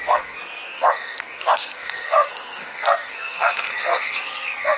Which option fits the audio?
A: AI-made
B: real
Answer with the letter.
A